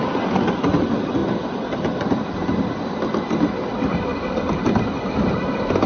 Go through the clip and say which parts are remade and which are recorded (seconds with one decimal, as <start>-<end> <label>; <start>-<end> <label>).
0.0-4.1 recorded; 4.1-4.8 remade; 4.8-5.9 recorded